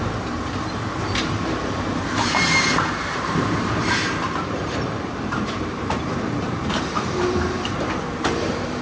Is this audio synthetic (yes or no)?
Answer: yes